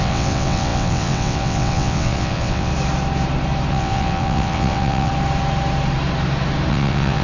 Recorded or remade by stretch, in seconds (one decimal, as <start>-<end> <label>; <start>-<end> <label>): 0.0-2.7 remade; 2.7-3.7 recorded; 3.7-5.1 remade; 5.1-6.7 recorded; 6.7-7.2 remade

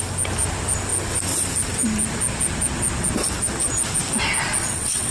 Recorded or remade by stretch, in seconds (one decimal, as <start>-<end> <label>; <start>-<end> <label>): 0.0-4.6 recorded; 4.6-5.1 remade

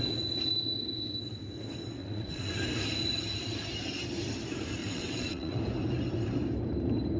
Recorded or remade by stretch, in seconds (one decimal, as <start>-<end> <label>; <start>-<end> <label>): 0.0-2.0 recorded; 2.0-2.5 remade; 2.5-4.8 recorded; 4.8-5.6 remade; 5.6-7.2 recorded

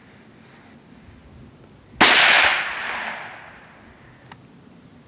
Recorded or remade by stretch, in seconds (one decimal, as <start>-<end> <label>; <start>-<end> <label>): 0.0-5.1 recorded

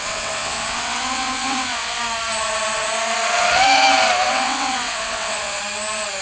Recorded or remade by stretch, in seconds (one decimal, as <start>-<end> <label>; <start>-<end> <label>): 0.0-2.0 remade; 2.0-4.3 recorded; 4.3-5.6 remade; 5.6-6.2 recorded

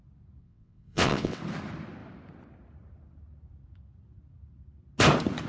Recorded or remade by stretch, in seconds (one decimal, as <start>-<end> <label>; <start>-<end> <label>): 0.0-0.4 recorded; 0.4-1.4 remade; 1.4-5.5 recorded

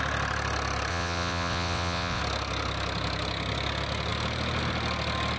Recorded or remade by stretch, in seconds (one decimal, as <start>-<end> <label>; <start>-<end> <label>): 0.0-0.9 recorded; 0.9-2.2 remade; 2.2-5.4 recorded